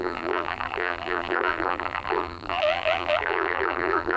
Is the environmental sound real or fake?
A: fake